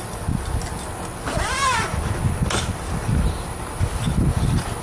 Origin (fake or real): real